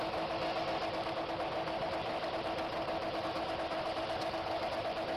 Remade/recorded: recorded